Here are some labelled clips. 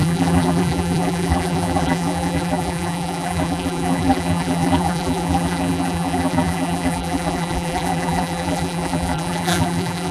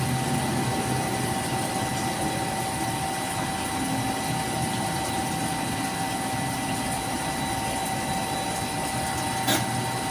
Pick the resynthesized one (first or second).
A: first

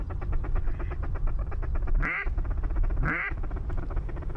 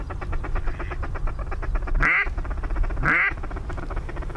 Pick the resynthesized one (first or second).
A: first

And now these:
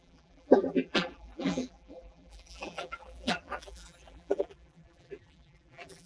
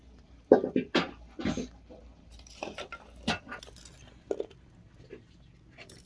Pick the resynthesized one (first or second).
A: first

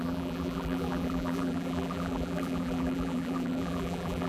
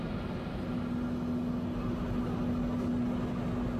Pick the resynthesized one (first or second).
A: first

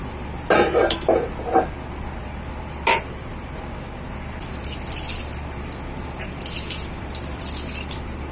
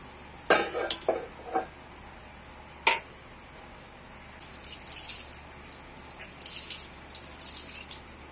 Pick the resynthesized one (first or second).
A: first